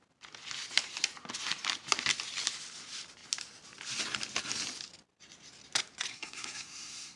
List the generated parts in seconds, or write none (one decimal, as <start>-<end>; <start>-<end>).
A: 6.1-7.2